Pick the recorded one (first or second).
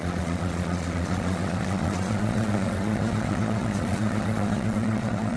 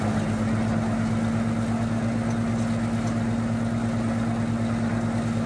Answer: second